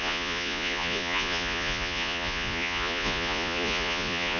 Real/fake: fake